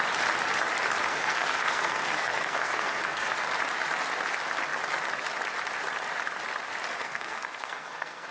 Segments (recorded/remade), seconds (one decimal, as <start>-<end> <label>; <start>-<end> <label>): 0.0-1.1 recorded; 1.1-3.3 remade; 3.3-7.0 recorded; 7.0-8.3 remade